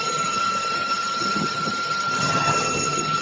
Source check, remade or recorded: remade